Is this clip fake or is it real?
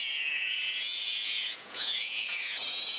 fake